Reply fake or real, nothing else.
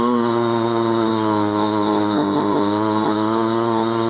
fake